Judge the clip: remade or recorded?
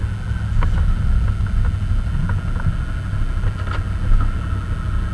recorded